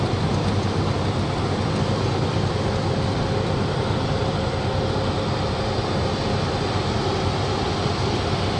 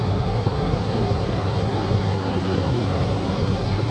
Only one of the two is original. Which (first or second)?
first